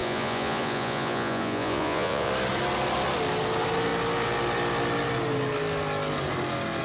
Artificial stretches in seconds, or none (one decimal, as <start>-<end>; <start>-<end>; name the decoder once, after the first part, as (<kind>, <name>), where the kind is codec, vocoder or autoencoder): 0.0-2.3 (vocoder, Vocos)

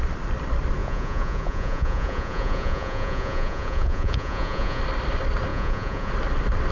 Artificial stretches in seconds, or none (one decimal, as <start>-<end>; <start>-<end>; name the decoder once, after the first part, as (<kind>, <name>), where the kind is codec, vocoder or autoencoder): 0.8-4.8 (vocoder, Vocos); 5.5-6.1

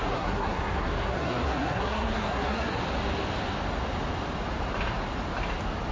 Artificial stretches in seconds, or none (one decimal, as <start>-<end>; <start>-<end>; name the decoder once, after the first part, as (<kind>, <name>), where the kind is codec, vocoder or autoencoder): 0.0-2.8 (codec, SNAC)

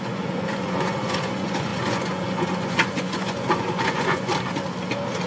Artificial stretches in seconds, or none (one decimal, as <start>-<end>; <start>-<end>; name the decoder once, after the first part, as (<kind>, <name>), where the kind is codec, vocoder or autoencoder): 0.0-4.3 (vocoder, Vocos)

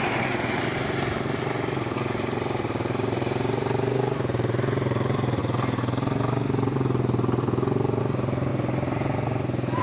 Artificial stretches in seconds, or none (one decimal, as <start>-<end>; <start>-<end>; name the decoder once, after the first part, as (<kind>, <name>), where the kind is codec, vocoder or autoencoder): 0.0-5.4 (vocoder, BigVGAN v2); 8.0-8.5

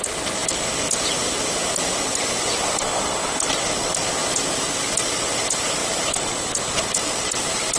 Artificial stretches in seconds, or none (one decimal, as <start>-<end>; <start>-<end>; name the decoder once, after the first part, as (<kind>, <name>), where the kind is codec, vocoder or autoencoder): none